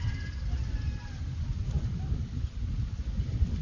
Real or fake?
real